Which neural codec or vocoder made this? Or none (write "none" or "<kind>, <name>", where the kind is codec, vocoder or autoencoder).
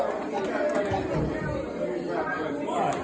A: none